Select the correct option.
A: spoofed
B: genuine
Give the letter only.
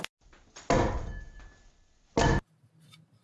B